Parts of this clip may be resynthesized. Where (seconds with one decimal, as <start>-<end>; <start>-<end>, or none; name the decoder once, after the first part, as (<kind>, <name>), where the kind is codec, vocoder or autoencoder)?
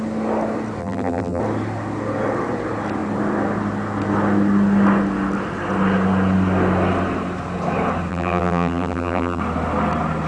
0.8-1.4 (vocoder, BigVGAN v2); 8.1-9.4